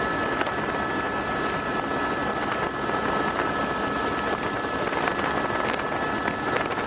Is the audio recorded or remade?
recorded